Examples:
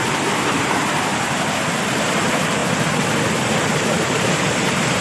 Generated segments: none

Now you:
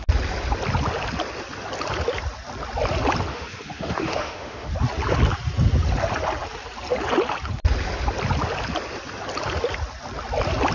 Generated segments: 3.3-4.7 (autoencoder, DAC-VAE)

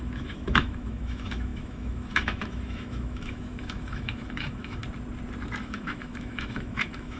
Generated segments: 0.0-4.8 (autoencoder, DAC-VAE); 5.6-7.2

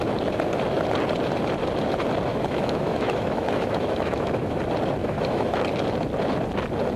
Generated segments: 2.3-4.6 (autoencoder, DAC-VAE); 5.0-5.6

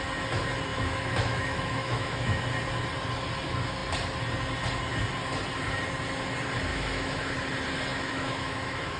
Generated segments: 0.7-2.4 (autoencoder, DAC-VAE); 6.7-7.3; 7.9-9.0

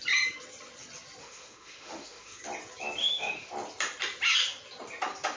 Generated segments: 1.2-2.4 (autoencoder, DAC-VAE); 3.0-3.5

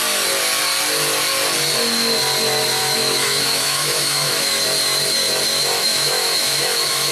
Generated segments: 2.8-4.5 (autoencoder, DAC-VAE); 5.8-7.1

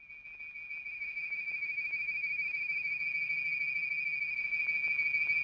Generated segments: 0.9-3.0 (autoencoder, DAC-VAE)